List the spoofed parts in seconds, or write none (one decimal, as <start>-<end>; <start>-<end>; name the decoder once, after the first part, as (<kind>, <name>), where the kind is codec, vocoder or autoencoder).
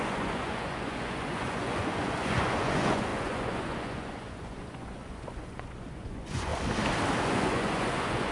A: 0.0-6.5 (vocoder, Vocos); 7.2-8.3